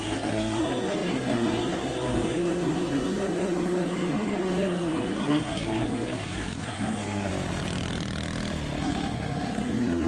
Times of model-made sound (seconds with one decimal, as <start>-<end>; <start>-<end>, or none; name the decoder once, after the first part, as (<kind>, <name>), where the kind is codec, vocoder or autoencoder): 0.0-7.3 (codec, SNAC); 8.8-10.1